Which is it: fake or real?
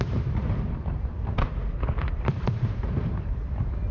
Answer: fake